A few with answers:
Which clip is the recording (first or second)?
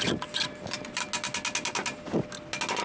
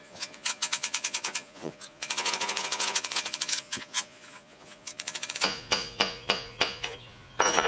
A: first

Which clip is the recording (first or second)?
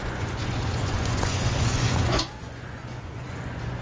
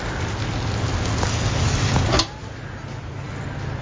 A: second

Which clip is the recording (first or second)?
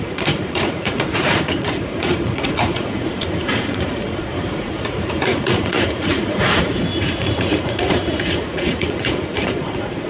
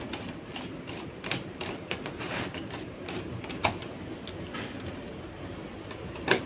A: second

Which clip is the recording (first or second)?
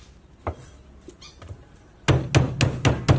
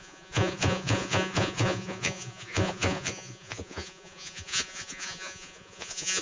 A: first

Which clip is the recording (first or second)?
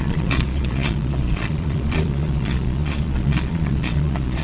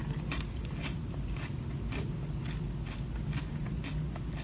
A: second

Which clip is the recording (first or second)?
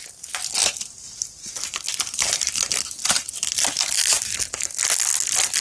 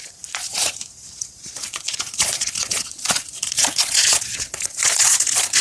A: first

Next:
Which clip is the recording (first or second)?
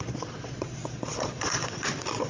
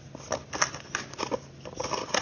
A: second